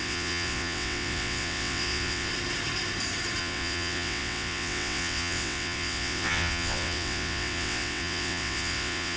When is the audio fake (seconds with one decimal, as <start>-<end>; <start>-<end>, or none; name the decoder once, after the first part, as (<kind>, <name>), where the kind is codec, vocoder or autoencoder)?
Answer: 0.0-2.3 (vocoder, WaveNeXt); 3.4-9.2

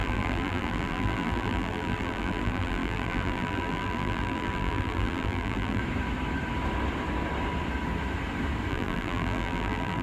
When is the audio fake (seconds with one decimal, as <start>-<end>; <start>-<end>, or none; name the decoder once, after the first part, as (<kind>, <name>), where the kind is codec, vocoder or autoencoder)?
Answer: 0.0-5.8 (vocoder, BigVGAN v2); 8.7-10.0

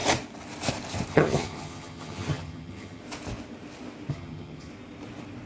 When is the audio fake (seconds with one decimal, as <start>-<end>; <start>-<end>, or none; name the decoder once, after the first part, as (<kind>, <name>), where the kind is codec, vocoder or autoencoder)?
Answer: 1.1-3.0 (vocoder, HiFi-GAN); 4.1-4.7